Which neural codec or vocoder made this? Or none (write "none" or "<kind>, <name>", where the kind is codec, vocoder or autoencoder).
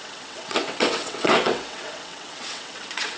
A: vocoder, WaveNeXt